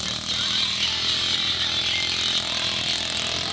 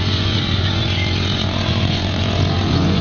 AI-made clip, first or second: second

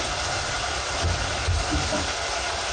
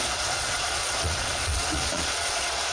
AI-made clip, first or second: second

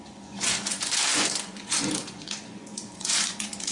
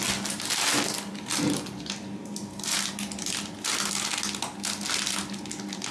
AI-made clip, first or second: first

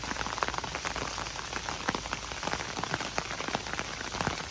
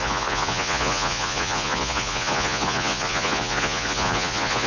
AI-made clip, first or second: second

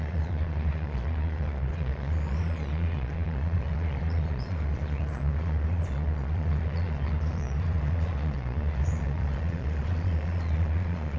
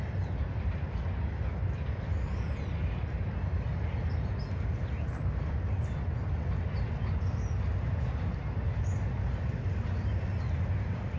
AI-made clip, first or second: first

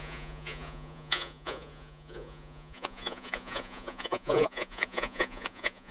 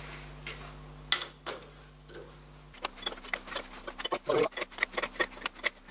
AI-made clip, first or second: first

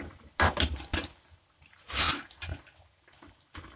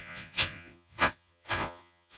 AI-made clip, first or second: second